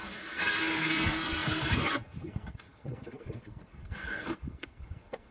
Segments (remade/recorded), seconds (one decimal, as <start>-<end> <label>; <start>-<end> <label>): 0.0-5.3 remade